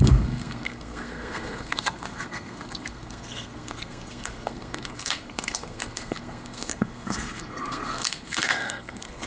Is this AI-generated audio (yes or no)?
yes